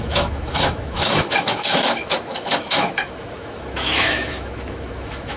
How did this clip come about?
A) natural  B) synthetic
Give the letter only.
B